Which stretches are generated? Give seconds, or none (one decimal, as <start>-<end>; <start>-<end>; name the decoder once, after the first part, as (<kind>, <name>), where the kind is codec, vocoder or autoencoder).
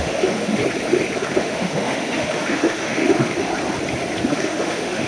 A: 0.0-0.6 (autoencoder, DAC-VAE); 1.2-3.5; 4.3-5.1